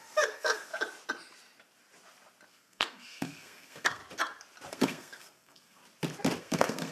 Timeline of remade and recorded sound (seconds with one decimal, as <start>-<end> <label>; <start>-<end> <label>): 0.0-0.7 remade; 0.7-2.5 recorded; 2.5-4.0 remade; 4.0-4.7 recorded; 4.7-5.8 remade; 5.8-6.4 recorded; 6.4-6.9 remade